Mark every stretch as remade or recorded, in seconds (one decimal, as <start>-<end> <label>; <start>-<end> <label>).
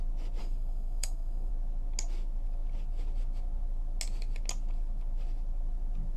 0.0-0.4 recorded; 0.4-1.5 remade; 1.5-6.2 recorded